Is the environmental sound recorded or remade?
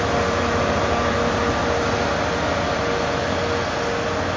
recorded